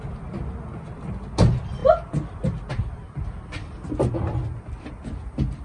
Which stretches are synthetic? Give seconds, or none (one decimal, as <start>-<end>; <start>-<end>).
none